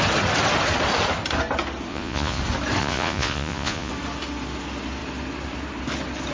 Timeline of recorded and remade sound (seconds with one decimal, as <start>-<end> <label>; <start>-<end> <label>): 0.0-1.9 recorded; 1.9-2.4 remade; 2.4-2.8 recorded; 2.8-3.9 remade; 3.9-6.3 recorded